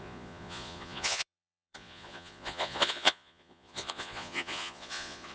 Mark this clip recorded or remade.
remade